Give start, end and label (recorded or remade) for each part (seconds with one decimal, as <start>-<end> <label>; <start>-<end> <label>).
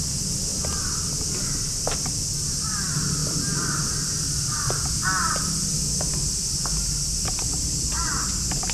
0.0-8.7 recorded